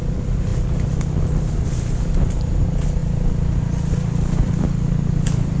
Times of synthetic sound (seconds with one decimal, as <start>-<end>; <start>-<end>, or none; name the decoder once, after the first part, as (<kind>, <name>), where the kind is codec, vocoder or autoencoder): none

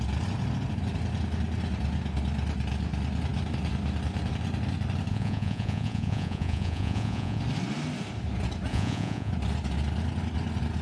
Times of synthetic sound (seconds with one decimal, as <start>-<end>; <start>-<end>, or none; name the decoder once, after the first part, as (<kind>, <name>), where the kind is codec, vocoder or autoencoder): 5.1-7.4 (vocoder, Vocos); 8.7-9.3

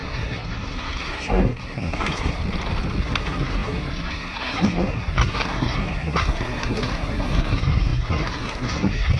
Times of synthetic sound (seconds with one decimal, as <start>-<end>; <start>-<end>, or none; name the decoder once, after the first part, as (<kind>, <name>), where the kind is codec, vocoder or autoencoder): 0.0-2.4 (codec, SNAC); 3.0-9.2

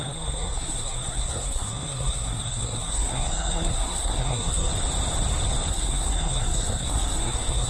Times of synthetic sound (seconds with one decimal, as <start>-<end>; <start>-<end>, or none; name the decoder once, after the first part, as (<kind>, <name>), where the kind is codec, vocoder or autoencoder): 0.0-4.7 (codec, SNAC); 5.7-7.7

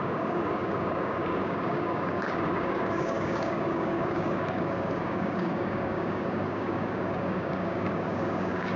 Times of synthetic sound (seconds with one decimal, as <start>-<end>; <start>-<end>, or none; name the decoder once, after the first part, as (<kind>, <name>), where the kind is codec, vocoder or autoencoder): 0.0-8.8 (codec, DAC)